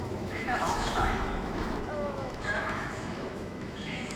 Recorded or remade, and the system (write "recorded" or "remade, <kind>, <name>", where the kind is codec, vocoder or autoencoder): remade, autoencoder, DAC-VAE